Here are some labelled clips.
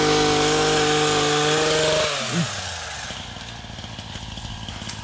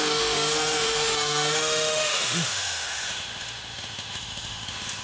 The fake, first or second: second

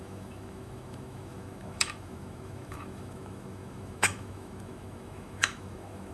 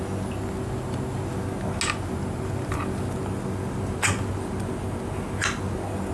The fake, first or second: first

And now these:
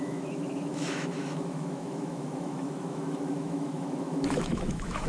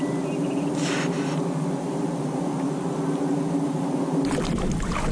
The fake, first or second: first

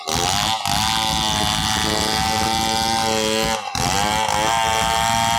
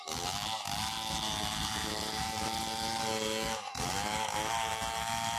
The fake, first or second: second